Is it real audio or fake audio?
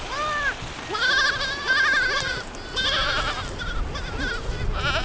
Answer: real